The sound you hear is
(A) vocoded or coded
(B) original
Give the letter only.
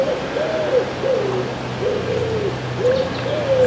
B